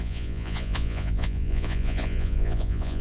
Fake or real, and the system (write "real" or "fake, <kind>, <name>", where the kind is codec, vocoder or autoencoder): fake, vocoder, Vocos